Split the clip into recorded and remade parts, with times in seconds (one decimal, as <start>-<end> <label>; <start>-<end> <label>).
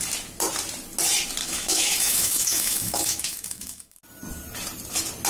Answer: 0.0-1.4 recorded; 1.4-4.0 remade; 4.0-5.3 recorded